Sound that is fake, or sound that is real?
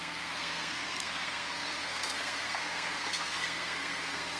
fake